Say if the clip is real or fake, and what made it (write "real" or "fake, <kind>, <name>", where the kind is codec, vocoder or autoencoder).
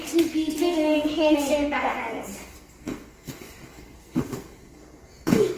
fake, codec, SNAC